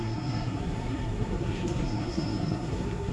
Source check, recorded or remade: remade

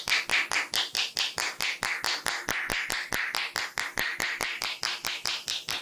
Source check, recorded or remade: recorded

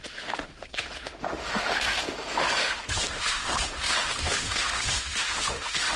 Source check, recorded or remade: remade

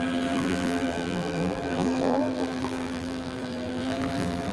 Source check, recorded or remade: remade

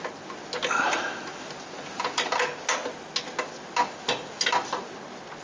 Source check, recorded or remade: recorded